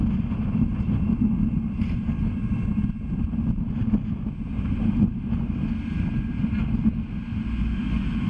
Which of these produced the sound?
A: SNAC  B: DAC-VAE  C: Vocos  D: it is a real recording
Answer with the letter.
D